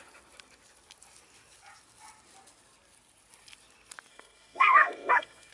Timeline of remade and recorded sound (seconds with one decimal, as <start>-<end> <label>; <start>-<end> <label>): 0.0-4.1 recorded; 4.1-5.5 remade